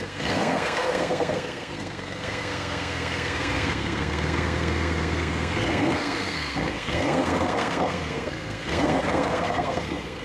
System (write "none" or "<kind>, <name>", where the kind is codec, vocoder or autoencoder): codec, SNAC